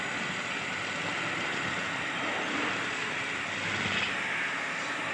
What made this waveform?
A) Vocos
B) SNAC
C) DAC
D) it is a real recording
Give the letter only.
D